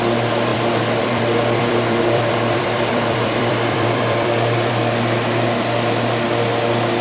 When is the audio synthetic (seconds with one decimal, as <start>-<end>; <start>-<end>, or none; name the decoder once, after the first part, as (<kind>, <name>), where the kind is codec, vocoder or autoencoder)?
0.5-4.7 (vocoder, BigVGAN v2)